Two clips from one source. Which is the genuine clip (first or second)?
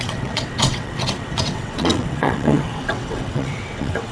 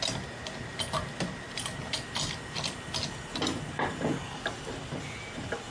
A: second